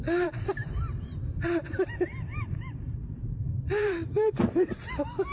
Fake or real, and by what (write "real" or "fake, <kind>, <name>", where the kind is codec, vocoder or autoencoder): fake, vocoder, BigVGAN v2